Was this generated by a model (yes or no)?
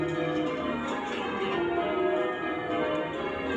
no